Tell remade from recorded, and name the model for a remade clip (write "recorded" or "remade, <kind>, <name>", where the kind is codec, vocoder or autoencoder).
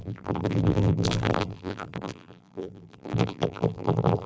remade, vocoder, BigVGAN v2